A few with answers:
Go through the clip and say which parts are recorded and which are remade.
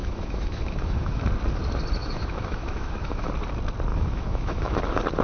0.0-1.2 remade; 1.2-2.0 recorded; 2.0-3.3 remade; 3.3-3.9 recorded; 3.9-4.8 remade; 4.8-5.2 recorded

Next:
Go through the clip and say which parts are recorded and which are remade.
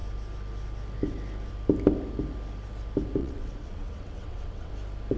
0.0-3.2 recorded; 3.2-4.7 remade; 4.7-5.2 recorded